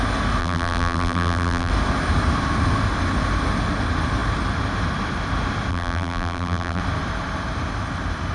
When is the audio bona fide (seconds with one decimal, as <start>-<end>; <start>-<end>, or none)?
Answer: 0.0-0.4; 1.7-5.7; 6.8-8.3